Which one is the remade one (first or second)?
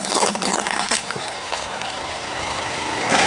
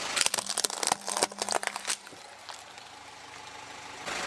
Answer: first